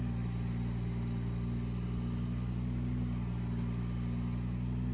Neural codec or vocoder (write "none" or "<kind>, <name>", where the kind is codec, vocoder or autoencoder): none